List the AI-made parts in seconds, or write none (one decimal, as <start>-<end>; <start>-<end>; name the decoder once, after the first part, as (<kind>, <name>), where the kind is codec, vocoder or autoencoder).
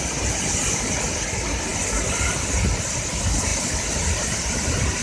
none